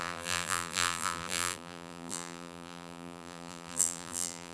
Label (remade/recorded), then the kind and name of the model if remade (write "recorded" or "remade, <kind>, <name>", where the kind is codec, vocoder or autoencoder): remade, vocoder, BigVGAN v2